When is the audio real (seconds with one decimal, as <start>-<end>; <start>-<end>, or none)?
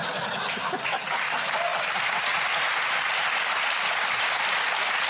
0.0-5.1